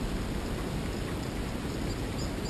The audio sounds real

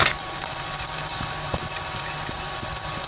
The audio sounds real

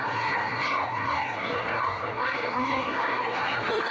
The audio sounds fake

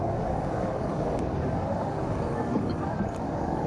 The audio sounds fake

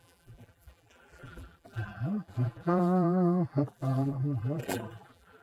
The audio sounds fake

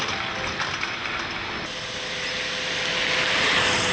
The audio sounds real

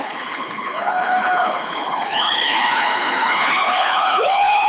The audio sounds fake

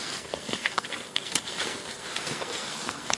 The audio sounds fake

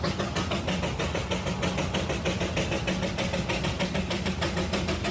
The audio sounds real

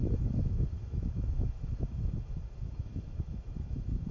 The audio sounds fake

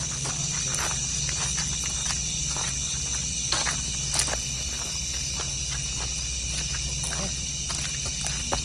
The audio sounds real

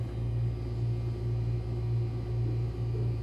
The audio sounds real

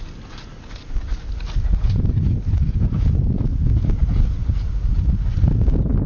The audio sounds real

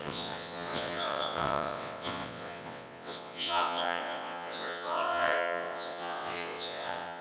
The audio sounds fake